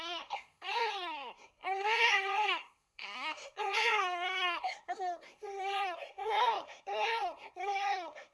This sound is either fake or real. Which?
fake